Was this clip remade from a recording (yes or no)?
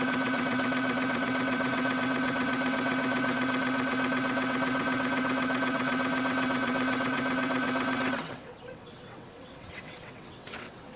yes